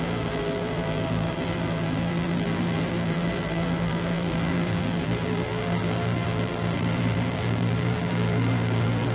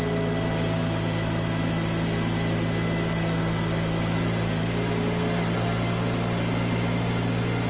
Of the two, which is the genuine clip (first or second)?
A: second